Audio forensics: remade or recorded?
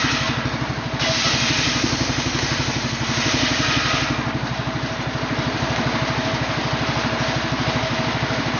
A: recorded